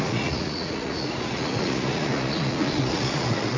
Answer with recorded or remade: remade